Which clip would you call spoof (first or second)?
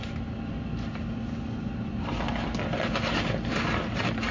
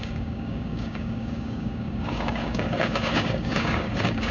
second